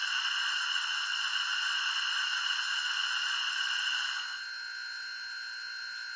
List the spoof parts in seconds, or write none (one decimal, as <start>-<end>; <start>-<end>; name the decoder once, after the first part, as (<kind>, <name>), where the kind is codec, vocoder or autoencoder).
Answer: none